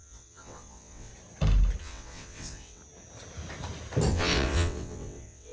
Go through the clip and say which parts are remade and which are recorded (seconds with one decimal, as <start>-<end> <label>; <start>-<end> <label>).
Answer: 0.0-1.1 remade; 1.1-1.8 recorded; 1.8-2.8 remade; 2.8-4.1 recorded; 4.1-5.5 remade